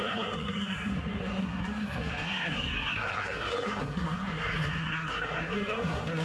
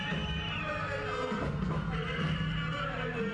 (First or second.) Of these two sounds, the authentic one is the second